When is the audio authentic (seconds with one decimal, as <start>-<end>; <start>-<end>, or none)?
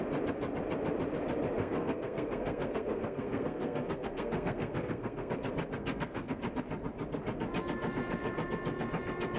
0.0-1.6; 5.3-5.7; 6.4-9.4